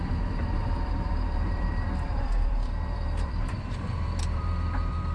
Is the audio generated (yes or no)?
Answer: yes